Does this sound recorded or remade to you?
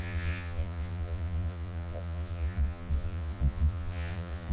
remade